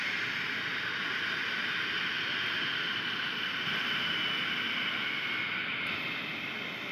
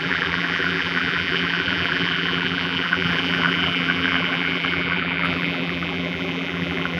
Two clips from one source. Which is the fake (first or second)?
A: second